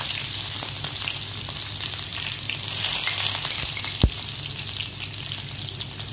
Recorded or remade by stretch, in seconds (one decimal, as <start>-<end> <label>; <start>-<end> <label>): 0.0-6.1 recorded